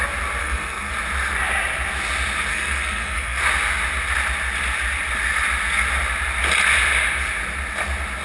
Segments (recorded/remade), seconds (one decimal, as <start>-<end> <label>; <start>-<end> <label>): 0.0-0.4 recorded; 0.4-0.9 remade; 0.9-2.5 recorded; 2.5-3.4 remade; 3.4-8.2 recorded